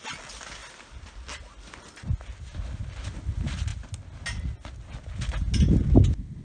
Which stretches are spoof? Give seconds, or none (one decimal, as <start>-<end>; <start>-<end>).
none